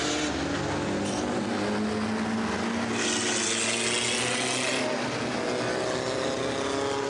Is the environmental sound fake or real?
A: real